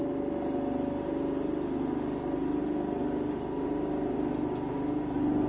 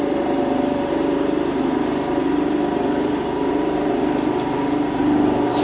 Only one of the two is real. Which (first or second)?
first